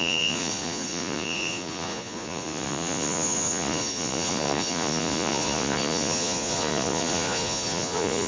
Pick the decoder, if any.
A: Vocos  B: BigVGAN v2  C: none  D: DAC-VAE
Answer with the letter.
A